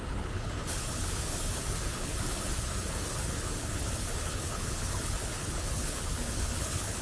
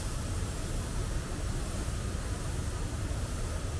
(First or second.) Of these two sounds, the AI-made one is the first